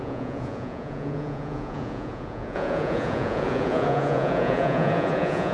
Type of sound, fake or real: fake